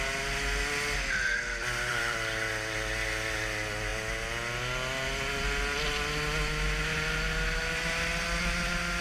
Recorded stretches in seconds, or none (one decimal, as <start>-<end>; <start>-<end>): 0.0-1.9; 2.5-9.0